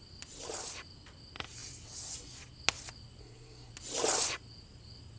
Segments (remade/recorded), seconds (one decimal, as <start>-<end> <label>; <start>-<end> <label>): 0.0-3.2 recorded; 3.2-3.7 remade; 3.7-5.2 recorded